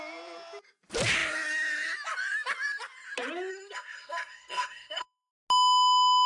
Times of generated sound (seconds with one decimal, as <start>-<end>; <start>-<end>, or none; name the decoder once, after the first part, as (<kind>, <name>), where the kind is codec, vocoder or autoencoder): 3.5-5.3 (codec, SNAC)